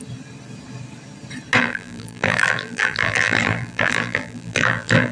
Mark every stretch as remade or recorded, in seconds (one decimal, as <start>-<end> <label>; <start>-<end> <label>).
0.0-1.6 recorded; 1.6-5.1 remade